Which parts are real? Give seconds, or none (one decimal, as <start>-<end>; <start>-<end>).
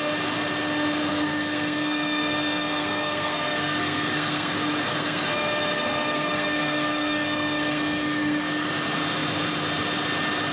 0.0-1.1; 4.5-4.9; 8.7-10.5